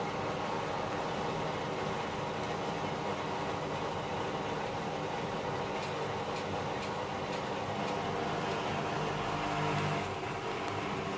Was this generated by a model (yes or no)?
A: no